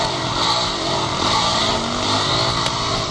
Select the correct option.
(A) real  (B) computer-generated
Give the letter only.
A